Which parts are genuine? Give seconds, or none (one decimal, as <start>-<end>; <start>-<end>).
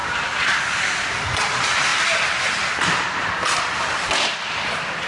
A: 0.0-5.1